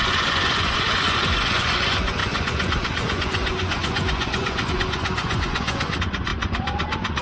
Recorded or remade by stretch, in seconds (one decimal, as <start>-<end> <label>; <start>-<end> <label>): 0.0-7.2 remade

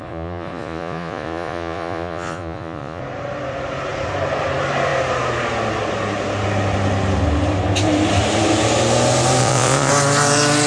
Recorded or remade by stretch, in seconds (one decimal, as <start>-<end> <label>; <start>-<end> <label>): 0.0-3.0 remade; 3.0-9.4 recorded; 9.4-9.9 remade; 9.9-10.7 recorded

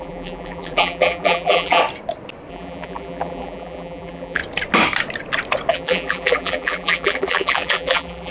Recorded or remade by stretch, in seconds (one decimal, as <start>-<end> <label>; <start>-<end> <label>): 0.0-1.8 remade; 1.8-2.5 recorded; 2.5-4.4 remade; 4.4-5.7 recorded; 5.7-8.3 remade

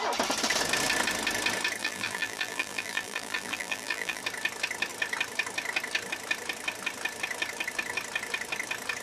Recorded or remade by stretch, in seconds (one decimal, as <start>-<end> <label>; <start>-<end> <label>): 0.0-1.8 recorded; 1.8-4.2 remade; 4.2-9.0 recorded

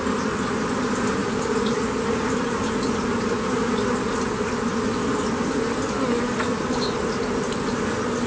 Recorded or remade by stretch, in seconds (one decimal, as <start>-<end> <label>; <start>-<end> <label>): 0.0-8.3 recorded

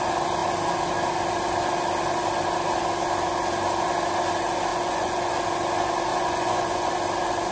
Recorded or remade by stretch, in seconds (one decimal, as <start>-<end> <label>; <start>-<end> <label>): 0.0-4.7 recorded; 4.7-5.3 remade; 5.3-6.1 recorded; 6.1-6.9 remade; 6.9-7.5 recorded

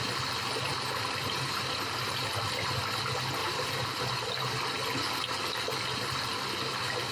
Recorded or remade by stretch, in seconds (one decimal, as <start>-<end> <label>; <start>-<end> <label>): 0.0-0.7 recorded; 0.7-2.3 remade; 2.3-3.4 recorded; 3.4-4.0 remade; 4.0-7.1 recorded

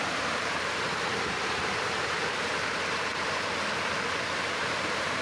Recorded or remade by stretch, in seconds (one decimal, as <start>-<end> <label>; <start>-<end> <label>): 0.0-3.1 remade; 3.1-4.4 recorded; 4.4-5.2 remade